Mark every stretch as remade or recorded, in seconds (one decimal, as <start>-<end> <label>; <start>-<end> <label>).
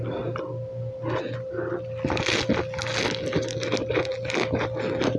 0.0-5.2 recorded